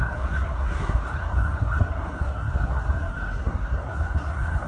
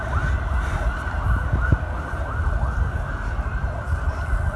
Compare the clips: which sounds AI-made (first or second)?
first